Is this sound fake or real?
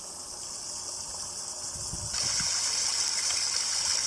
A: real